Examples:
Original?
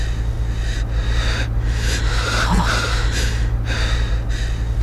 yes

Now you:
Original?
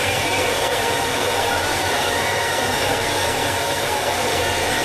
no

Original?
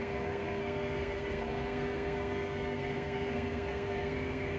no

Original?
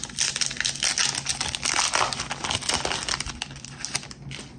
yes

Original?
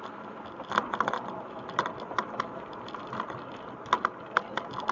yes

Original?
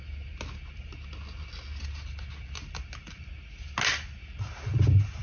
yes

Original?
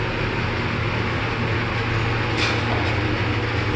yes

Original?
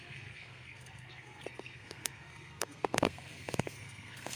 no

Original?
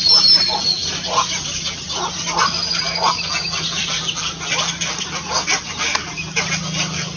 yes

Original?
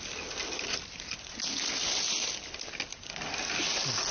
yes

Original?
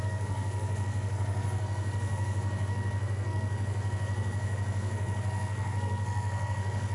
no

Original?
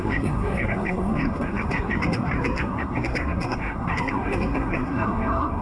no